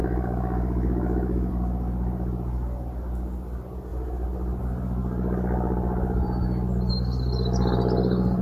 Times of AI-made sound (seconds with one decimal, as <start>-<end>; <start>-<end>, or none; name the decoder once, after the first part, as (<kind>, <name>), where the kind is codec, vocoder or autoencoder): 0.0-1.5 (autoencoder, DAC-VAE)